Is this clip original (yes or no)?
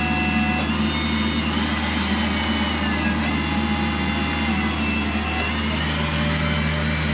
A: yes